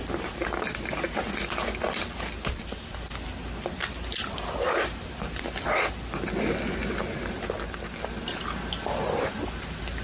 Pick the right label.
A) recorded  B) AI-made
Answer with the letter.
A